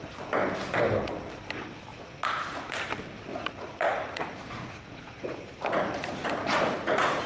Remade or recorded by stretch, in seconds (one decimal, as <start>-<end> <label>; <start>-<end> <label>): 0.0-1.9 recorded; 1.9-2.6 remade; 2.6-3.3 recorded; 3.3-7.3 remade

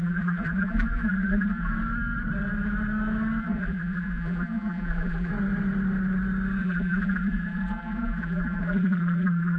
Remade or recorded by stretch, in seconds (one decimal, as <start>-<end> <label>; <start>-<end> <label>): 0.0-1.7 remade; 1.7-3.4 recorded; 3.4-5.3 remade; 5.3-6.6 recorded; 6.6-9.6 remade

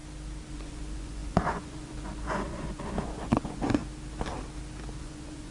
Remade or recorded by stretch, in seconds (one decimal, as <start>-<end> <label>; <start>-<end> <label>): 0.0-0.5 recorded; 0.5-3.8 remade; 3.8-5.0 recorded; 5.0-5.5 remade

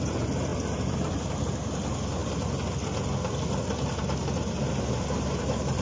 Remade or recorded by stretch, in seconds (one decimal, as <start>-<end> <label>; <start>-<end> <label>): 0.0-5.8 recorded

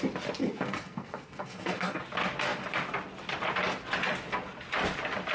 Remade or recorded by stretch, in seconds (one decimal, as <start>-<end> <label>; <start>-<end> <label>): 0.0-0.4 recorded; 0.4-2.0 remade; 2.0-5.3 recorded

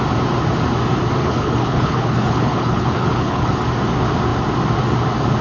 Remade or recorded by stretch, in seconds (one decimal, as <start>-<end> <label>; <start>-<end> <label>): 0.0-1.2 recorded; 1.2-3.6 remade; 3.6-5.4 recorded

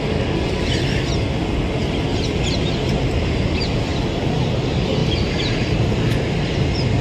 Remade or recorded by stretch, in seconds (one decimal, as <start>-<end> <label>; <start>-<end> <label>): 0.0-2.1 recorded; 2.1-3.0 remade; 3.0-5.0 recorded; 5.0-5.8 remade; 5.8-7.0 recorded

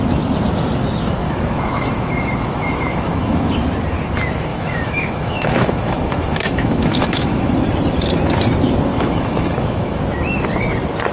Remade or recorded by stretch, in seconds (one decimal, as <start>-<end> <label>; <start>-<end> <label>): 0.0-1.2 recorded; 1.2-3.5 remade; 3.5-4.5 recorded; 4.5-7.5 remade; 7.5-8.9 recorded; 8.9-10.0 remade; 10.0-11.1 recorded